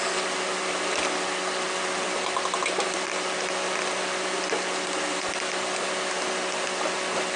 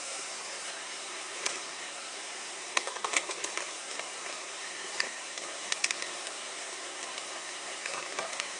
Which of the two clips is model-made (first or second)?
second